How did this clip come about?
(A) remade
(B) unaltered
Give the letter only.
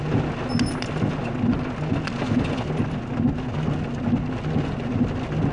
B